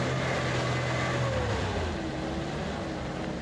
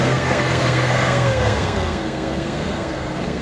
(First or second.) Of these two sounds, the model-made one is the second